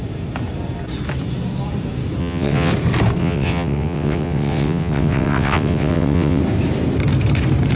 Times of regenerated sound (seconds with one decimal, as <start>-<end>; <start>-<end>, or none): 2.2-2.7; 3.2-6.4